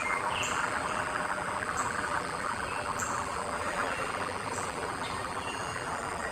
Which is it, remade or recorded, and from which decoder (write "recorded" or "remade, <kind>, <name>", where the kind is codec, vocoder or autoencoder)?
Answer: remade, vocoder, BigVGAN v2